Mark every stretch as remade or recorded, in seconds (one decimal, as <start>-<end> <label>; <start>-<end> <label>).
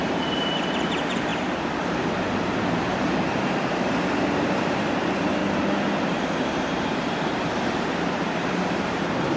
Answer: 0.0-1.3 remade; 1.3-2.8 recorded; 2.8-5.4 remade; 5.4-6.0 recorded; 6.0-9.4 remade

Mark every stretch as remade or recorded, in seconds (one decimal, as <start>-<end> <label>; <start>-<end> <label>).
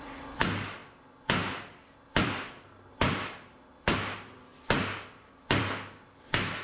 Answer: 0.0-0.8 remade; 0.8-1.8 recorded; 1.8-4.5 remade; 4.5-5.2 recorded; 5.2-6.6 remade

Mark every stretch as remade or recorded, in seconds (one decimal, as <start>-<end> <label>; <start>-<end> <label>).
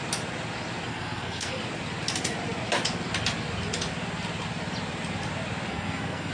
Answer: 0.0-0.9 recorded; 0.9-1.6 remade; 1.6-5.7 recorded; 5.7-6.3 remade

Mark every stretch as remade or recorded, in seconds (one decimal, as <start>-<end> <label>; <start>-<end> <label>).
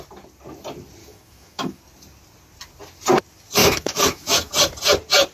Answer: 0.0-1.0 recorded; 1.0-1.8 remade; 1.8-3.6 recorded; 3.6-4.5 remade; 4.5-5.3 recorded